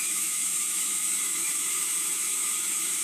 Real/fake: fake